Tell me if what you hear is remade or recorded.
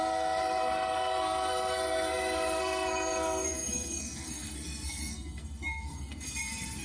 remade